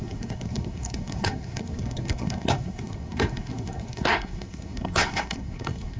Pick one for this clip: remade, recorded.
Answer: remade